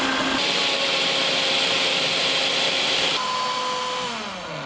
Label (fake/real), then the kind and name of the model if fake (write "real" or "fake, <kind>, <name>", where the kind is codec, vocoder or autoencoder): real